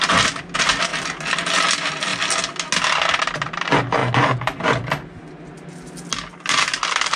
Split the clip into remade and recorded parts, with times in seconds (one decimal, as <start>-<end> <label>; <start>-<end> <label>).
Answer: 0.0-7.2 recorded